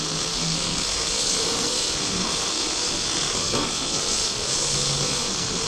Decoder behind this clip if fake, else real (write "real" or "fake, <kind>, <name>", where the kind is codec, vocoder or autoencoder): fake, codec, SNAC